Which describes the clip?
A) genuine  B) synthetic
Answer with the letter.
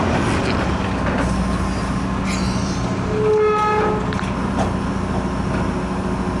A